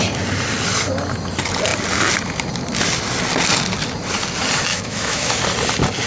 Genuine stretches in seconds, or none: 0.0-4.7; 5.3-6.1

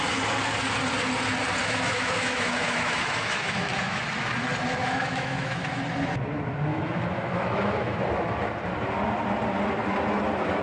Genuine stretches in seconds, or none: 0.0-1.6; 4.0-4.8; 5.8-6.7; 8.0-10.6

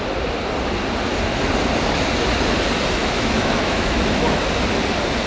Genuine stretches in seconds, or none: 0.0-3.0; 4.4-5.3

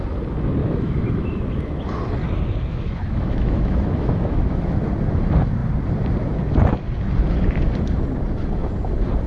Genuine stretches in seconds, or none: 0.0-0.6; 1.4-2.7; 4.8-9.3

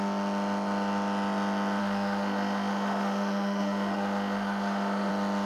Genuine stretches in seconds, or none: 0.0-1.8; 5.1-5.5

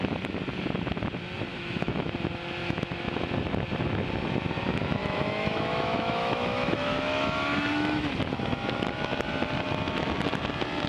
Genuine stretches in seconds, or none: 0.0-1.5; 2.1-2.6; 3.2-5.0; 8.0-10.9

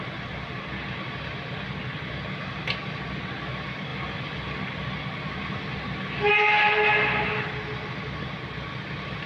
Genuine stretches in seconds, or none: 0.0-9.3

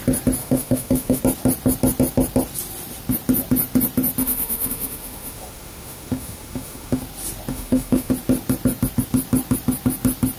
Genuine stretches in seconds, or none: 0.0-0.4; 1.2-4.2; 7.0-7.5; 8.1-10.4